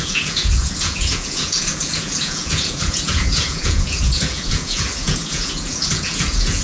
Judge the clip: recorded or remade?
remade